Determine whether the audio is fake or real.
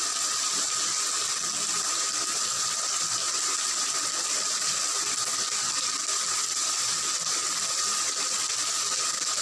real